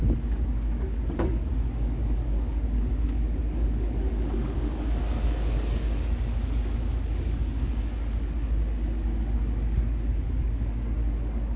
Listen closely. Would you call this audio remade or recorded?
remade